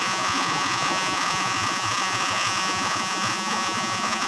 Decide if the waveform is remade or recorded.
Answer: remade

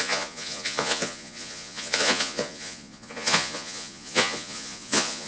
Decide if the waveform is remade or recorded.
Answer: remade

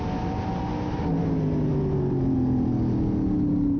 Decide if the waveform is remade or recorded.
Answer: recorded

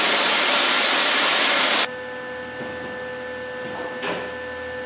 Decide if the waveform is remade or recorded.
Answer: recorded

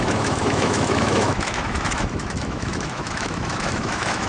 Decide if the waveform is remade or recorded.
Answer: remade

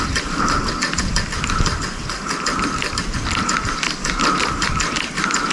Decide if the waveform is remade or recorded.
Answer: recorded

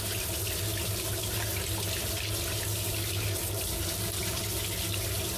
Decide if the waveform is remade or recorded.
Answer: recorded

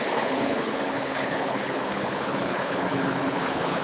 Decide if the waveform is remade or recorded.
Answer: remade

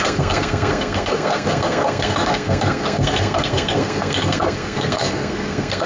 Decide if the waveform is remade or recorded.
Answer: remade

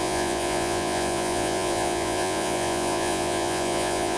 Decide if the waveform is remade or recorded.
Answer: remade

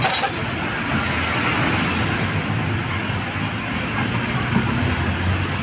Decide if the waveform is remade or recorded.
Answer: recorded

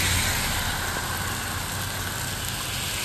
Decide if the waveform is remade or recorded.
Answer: recorded